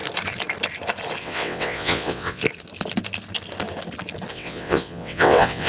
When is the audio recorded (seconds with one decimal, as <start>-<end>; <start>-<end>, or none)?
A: 0.0-1.2; 2.4-4.3